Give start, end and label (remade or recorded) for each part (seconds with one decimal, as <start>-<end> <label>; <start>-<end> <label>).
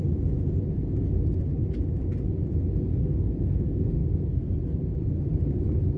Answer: 0.0-3.0 recorded; 3.0-4.5 remade; 4.5-6.0 recorded